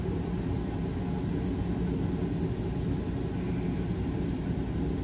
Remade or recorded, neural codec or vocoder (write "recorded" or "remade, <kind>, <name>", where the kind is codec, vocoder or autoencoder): recorded